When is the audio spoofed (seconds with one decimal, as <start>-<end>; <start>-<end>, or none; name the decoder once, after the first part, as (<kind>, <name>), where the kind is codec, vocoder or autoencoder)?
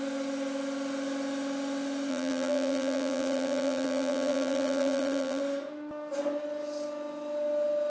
2.1-5.4 (vocoder, BigVGAN v2)